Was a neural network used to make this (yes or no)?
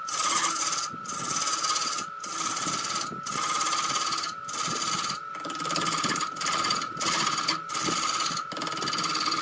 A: no